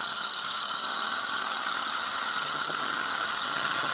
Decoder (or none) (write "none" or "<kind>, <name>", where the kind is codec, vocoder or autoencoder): vocoder, HiFi-GAN